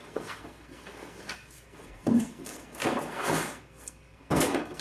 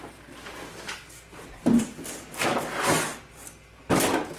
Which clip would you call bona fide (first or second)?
second